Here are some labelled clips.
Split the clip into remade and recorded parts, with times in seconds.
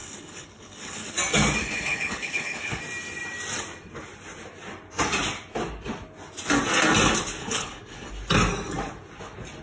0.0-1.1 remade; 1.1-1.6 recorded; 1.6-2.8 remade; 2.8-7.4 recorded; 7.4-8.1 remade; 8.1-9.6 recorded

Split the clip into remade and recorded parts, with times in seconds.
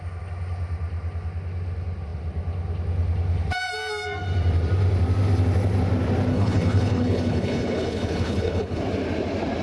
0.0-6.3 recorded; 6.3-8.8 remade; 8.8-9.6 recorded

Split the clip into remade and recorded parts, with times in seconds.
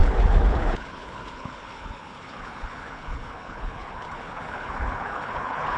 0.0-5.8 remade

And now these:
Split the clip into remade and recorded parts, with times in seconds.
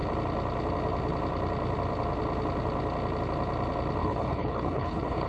0.0-4.0 recorded; 4.0-5.3 remade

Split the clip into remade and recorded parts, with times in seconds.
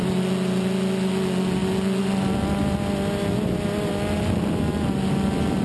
0.0-5.6 recorded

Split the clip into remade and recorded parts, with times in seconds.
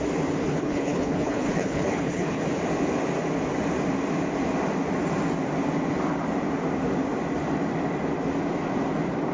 0.0-0.4 recorded; 0.4-2.4 remade; 2.4-9.3 recorded